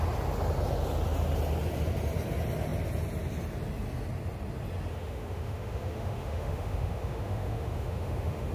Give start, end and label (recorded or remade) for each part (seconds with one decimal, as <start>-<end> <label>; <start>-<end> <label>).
0.0-4.9 recorded; 4.9-8.5 remade